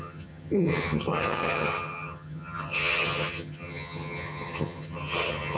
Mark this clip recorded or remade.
remade